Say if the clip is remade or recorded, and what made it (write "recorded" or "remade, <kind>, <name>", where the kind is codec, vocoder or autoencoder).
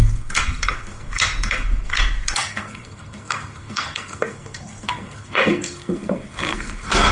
remade, codec, SNAC